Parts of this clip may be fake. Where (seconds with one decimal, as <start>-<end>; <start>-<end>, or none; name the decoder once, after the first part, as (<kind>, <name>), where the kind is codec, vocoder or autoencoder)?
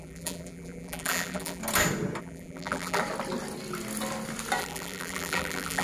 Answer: 0.0-1.6 (vocoder, BigVGAN v2); 2.2-3.0; 4.6-5.8